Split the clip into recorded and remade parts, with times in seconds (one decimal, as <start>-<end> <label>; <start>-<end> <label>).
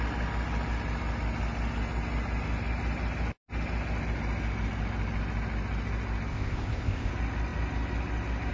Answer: 0.0-6.3 recorded; 6.3-7.1 remade; 7.1-8.5 recorded